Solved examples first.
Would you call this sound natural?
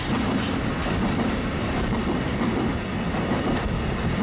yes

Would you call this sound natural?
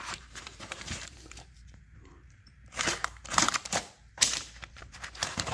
no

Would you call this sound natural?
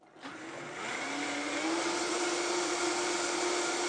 yes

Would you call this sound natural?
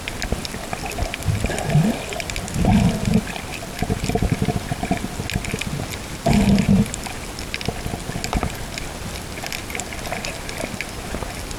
yes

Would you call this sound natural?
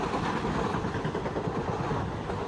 yes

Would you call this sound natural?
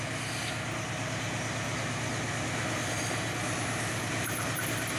yes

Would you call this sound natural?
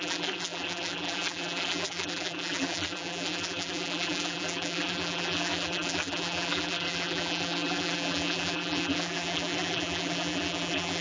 no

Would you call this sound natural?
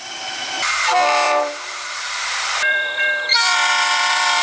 no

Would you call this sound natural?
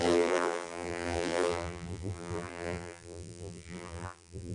no